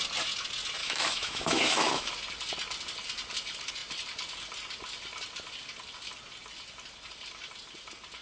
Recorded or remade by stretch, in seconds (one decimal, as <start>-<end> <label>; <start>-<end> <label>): 0.0-0.8 recorded; 0.8-2.1 remade; 2.1-8.2 recorded